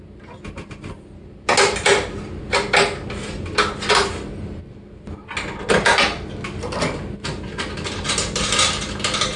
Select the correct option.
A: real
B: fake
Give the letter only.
A